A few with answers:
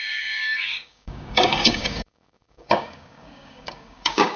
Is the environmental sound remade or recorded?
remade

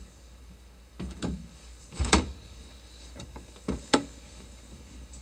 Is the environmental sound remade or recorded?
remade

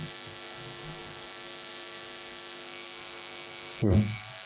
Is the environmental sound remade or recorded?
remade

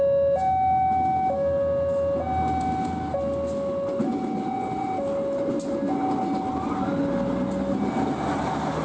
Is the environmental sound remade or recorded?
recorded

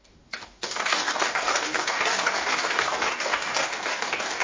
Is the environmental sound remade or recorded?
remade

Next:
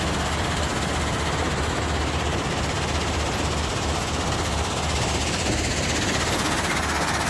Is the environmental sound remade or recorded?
recorded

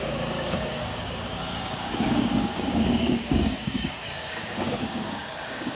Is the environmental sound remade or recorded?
remade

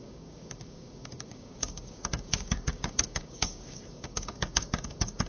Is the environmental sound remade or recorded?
remade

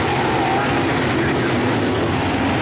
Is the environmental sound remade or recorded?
recorded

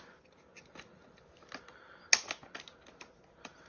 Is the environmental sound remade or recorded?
recorded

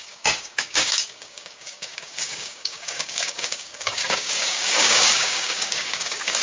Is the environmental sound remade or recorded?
remade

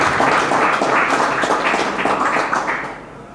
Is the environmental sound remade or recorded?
recorded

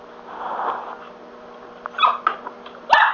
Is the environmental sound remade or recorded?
recorded